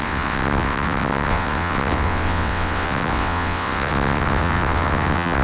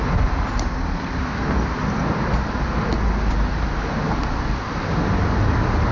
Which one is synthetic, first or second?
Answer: first